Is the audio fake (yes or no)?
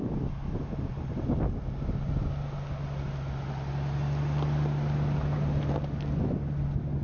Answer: no